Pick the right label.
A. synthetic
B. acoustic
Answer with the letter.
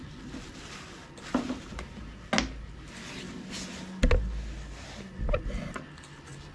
B